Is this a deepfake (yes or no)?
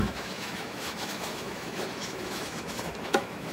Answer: yes